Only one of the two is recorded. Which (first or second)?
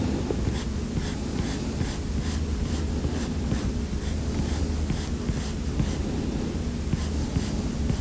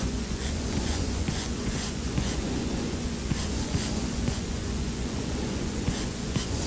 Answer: first